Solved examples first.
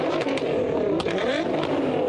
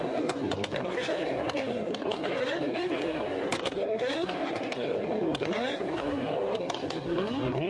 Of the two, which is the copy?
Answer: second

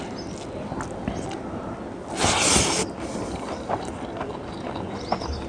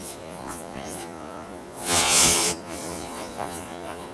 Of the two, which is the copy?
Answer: second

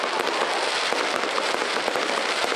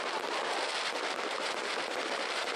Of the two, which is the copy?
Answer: second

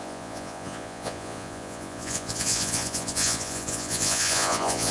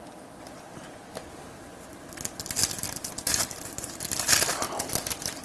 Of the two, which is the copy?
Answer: first